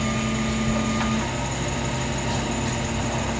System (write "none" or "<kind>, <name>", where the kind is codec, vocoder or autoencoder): none